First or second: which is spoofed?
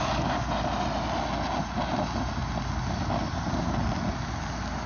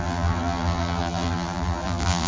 second